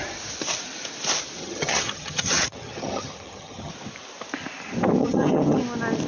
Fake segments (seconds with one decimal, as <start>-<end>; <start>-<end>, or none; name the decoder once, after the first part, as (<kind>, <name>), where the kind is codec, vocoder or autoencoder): 1.4-3.7 (vocoder, HiFi-GAN); 5.0-5.6